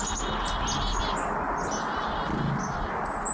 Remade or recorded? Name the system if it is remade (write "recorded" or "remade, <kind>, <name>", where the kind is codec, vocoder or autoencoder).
recorded